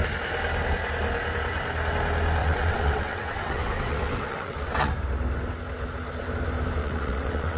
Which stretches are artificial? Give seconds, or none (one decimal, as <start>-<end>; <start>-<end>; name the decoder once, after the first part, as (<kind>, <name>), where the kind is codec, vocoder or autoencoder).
2.4-4.9 (vocoder, WaveNeXt); 6.8-7.6